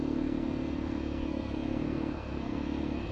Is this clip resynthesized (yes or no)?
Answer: yes